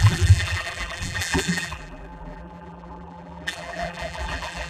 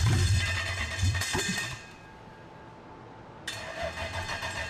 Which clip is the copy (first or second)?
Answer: first